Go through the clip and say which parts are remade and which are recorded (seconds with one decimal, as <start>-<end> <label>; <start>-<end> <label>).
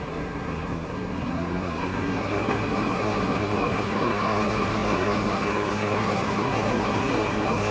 0.0-7.7 remade